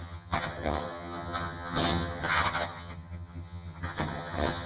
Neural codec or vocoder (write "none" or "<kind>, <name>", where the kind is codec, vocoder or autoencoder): vocoder, HiFi-GAN